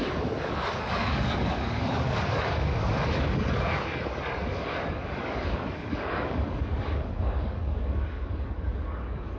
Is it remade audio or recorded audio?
remade